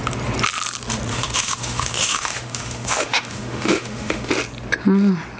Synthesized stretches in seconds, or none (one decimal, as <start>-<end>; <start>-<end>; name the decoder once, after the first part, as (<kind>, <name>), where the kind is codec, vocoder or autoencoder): 1.1-4.3 (autoencoder, DAC-VAE)